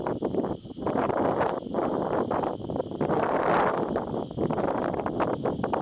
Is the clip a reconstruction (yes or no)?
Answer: no